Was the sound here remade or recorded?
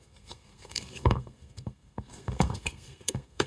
remade